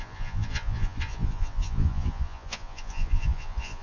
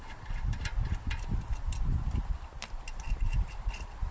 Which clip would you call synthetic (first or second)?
first